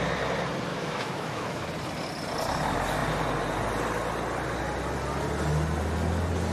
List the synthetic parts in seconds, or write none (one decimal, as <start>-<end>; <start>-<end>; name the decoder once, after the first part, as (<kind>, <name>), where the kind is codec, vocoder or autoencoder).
0.7-1.6 (autoencoder, DAC-VAE)